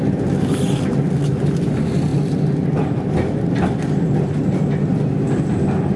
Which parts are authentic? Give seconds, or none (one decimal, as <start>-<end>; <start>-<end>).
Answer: 0.0-6.0